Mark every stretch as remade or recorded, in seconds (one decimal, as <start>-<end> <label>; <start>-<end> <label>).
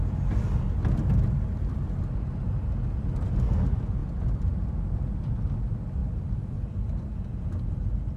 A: 0.0-8.2 recorded